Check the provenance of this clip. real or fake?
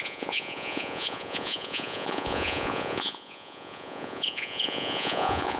fake